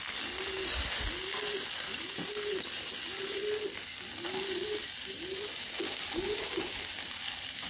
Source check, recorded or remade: recorded